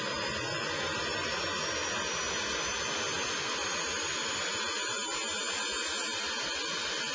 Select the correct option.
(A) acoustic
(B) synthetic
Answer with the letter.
A